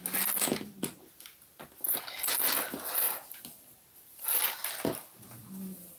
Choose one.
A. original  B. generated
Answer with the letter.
A